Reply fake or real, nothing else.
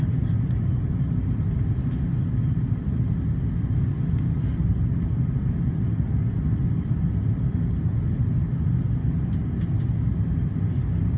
real